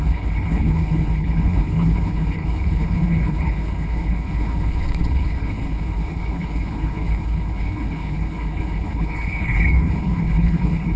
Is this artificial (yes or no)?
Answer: yes